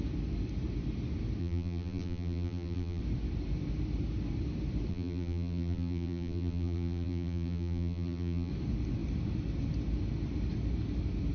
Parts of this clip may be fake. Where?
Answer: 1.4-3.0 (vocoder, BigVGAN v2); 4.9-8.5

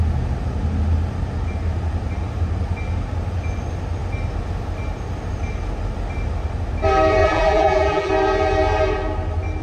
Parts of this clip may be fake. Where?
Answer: 7.2-8.1 (vocoder, BigVGAN v2)

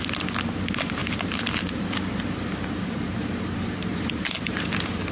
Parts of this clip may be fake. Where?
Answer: 1.0-3.4 (vocoder, BigVGAN v2); 3.9-5.1

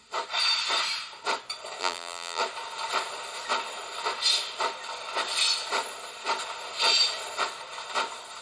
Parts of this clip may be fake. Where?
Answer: 1.8-2.4 (vocoder, BigVGAN v2)

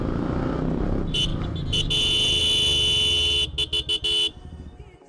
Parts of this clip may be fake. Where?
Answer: none

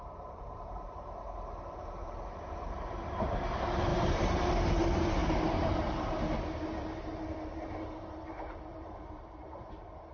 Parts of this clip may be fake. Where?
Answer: 0.0-3.9 (vocoder, BigVGAN v2); 4.8-10.1

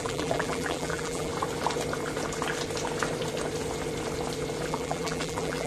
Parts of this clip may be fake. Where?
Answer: 0.0-1.3 (vocoder, BigVGAN v2); 4.7-5.7